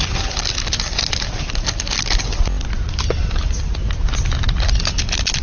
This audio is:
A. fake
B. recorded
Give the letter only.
B